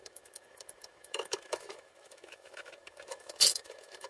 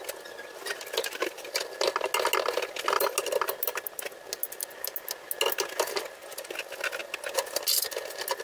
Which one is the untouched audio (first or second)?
second